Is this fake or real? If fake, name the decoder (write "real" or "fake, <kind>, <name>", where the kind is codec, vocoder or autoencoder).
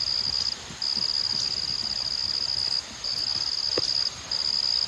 real